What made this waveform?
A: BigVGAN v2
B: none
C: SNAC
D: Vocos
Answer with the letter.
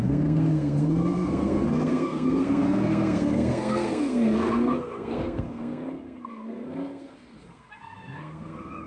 C